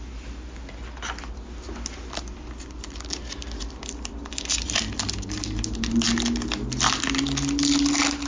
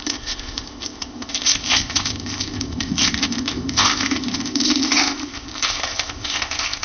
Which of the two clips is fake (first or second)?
second